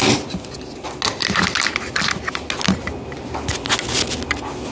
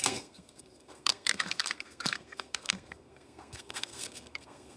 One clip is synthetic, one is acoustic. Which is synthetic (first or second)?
second